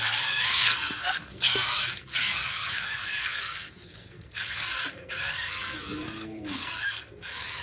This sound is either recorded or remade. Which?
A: remade